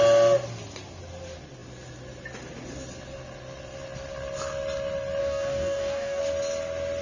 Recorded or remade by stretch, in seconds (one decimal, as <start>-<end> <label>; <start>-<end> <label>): 0.0-5.2 recorded; 5.2-6.2 remade; 6.2-7.0 recorded

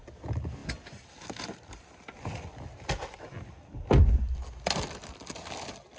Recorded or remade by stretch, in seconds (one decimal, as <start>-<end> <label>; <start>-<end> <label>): 0.0-6.0 recorded

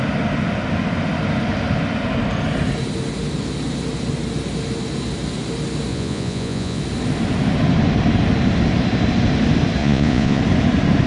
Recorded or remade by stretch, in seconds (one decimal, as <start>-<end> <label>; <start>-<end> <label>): 0.0-5.9 recorded; 5.9-6.8 remade; 6.8-9.8 recorded; 9.8-10.4 remade; 10.4-11.1 recorded

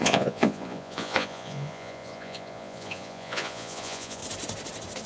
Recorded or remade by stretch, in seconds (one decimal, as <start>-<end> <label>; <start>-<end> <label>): 0.0-4.2 remade; 4.2-5.1 recorded

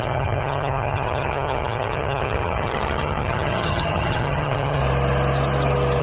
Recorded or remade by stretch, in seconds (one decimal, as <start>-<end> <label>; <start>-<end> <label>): 0.0-4.8 remade; 4.8-6.0 recorded